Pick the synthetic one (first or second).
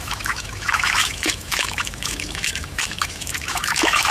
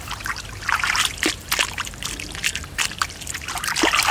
first